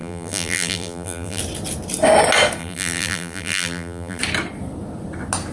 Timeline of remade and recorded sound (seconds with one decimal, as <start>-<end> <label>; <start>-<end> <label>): 0.0-1.4 remade; 1.4-2.6 recorded; 2.6-4.2 remade; 4.2-5.5 recorded